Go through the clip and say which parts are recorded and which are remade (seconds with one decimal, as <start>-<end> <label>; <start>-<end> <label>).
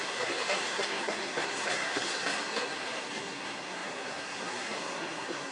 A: 0.0-5.5 remade